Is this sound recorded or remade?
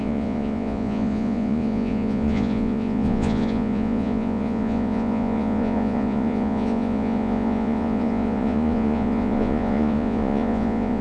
remade